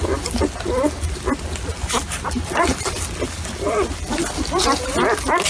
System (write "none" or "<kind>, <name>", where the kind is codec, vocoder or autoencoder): none